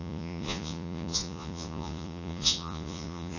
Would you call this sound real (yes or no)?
no